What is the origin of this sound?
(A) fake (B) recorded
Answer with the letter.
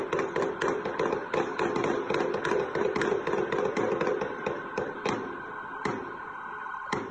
B